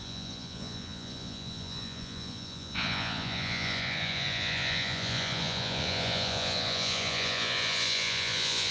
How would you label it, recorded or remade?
remade